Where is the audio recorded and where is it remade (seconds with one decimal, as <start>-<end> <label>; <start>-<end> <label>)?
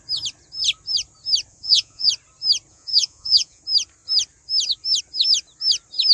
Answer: 0.0-1.5 recorded; 1.5-2.1 remade; 2.1-2.7 recorded; 2.7-3.6 remade; 3.6-6.1 recorded